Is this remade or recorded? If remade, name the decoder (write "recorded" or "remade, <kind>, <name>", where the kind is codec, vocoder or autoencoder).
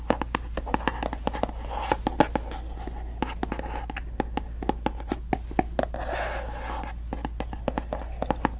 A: recorded